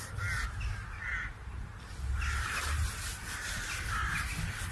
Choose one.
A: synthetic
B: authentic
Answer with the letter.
B